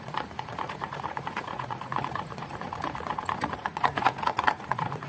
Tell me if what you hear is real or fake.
fake